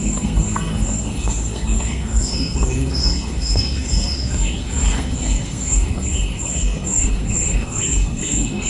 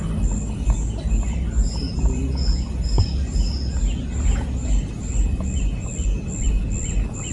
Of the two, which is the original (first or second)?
second